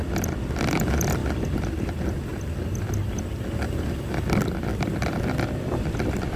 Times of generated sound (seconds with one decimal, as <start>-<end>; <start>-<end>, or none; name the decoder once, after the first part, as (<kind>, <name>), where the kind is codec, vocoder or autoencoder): 0.0-1.2 (vocoder, BigVGAN v2); 1.8-6.4